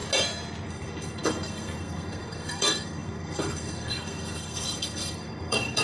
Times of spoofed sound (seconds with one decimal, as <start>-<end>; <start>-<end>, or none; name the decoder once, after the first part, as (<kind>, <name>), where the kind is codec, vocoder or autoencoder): 0.7-5.8 (codec, SNAC)